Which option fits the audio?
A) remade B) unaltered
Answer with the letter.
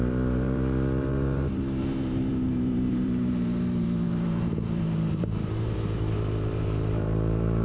A